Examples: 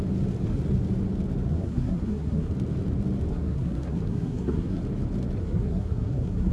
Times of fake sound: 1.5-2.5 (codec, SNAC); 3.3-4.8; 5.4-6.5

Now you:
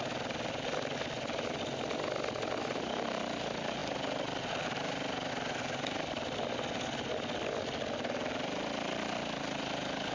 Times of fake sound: none

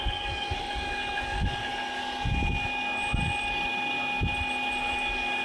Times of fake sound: 0.0-1.7 (codec, DAC); 4.8-5.4

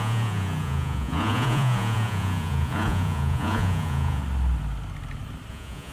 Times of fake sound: 0.0-4.2 (vocoder, Vocos); 5.5-5.9

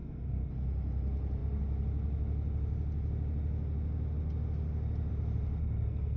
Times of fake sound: 0.0-0.5 (codec, SNAC); 5.6-6.2

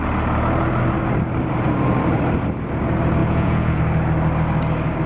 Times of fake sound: 3.2-3.8 (vocoder, Vocos)

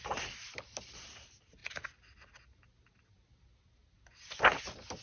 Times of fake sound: none